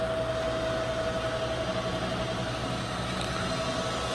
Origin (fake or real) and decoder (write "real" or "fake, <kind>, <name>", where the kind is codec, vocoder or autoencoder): real